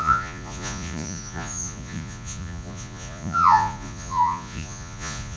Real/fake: fake